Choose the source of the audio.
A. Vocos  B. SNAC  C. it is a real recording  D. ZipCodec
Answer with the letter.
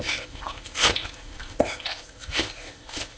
D